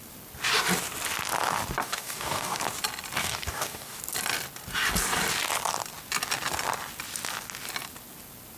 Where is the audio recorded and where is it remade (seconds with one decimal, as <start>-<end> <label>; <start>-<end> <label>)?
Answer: 0.0-1.8 recorded; 1.8-2.6 remade; 2.6-3.2 recorded; 3.2-4.0 remade; 4.0-8.6 recorded